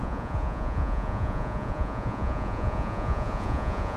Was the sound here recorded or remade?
remade